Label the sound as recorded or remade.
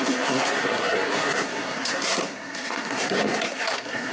remade